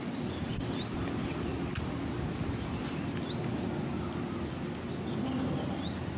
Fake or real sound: real